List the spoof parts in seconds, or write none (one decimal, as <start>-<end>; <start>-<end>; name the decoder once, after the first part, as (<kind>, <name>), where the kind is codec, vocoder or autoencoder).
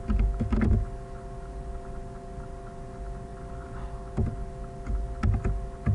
none